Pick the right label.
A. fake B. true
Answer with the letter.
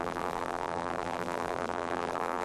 A